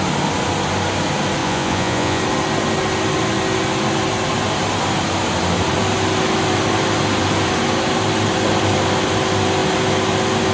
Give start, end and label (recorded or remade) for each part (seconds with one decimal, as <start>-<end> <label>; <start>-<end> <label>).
0.0-1.4 recorded; 1.4-2.2 remade; 2.2-10.5 recorded